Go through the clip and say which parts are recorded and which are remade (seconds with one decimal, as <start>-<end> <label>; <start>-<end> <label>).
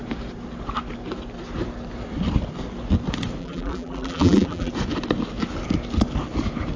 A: 0.0-3.4 recorded; 3.4-4.7 remade; 4.7-6.8 recorded